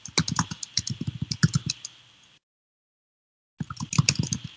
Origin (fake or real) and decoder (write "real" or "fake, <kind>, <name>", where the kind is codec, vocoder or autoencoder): real